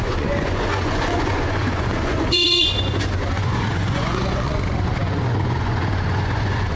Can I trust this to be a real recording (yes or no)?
no